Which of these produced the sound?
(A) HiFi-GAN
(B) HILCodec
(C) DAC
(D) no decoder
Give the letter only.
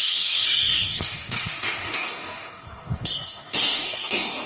C